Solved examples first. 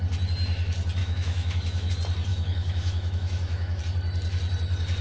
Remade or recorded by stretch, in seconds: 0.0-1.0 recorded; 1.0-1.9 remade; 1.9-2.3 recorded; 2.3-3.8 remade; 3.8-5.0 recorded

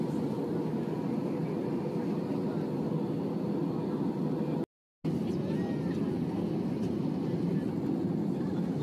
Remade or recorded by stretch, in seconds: 0.0-8.8 recorded

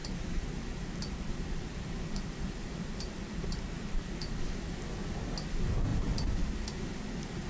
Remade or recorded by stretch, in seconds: 0.0-4.5 remade; 4.5-5.9 recorded; 5.9-6.5 remade; 6.5-7.5 recorded